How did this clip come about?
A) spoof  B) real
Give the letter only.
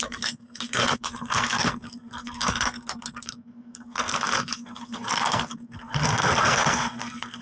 A